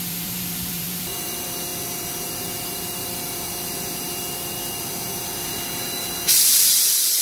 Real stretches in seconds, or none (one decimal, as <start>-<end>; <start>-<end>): none